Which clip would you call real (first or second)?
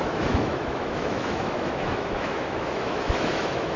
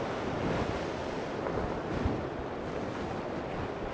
second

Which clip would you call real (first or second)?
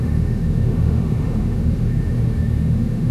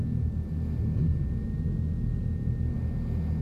second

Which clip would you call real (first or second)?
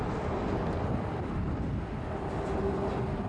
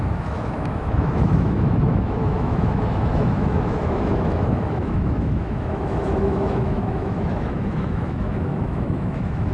first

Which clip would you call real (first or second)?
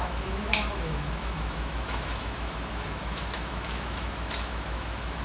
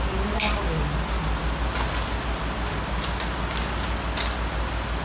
second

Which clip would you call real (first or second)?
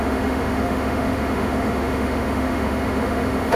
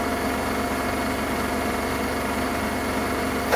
second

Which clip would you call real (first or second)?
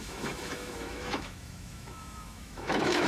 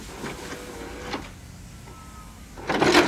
second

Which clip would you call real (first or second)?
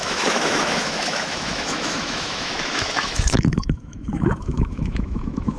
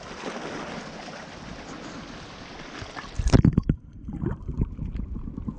second